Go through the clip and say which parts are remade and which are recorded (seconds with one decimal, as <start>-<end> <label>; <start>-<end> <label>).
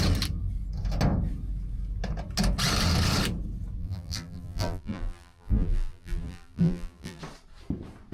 0.0-3.8 recorded; 3.8-7.2 remade; 7.2-8.1 recorded